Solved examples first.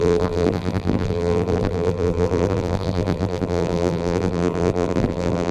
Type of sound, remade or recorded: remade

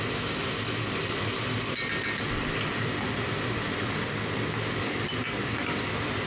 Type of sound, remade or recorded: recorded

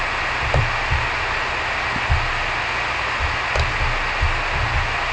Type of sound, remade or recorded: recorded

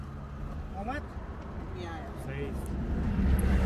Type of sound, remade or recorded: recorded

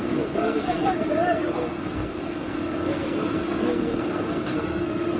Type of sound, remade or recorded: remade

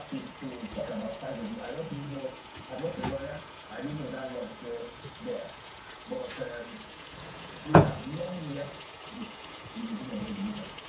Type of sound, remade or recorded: remade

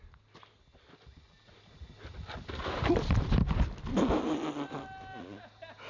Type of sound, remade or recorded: recorded